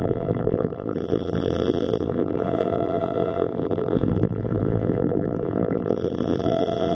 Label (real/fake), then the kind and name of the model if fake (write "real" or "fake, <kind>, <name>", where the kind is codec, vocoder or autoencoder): fake, vocoder, BigVGAN v2